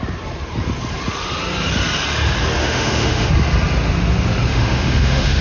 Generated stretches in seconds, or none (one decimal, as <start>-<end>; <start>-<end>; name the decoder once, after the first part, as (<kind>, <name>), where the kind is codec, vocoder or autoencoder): 2.6-3.3 (autoencoder, DAC-VAE); 4.5-5.4